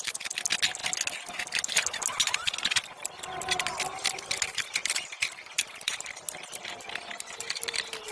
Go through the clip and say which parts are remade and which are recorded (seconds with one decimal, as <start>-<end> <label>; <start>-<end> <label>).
0.0-4.7 recorded; 4.7-6.6 remade; 6.6-8.1 recorded